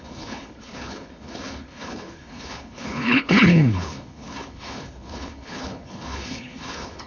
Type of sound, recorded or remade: remade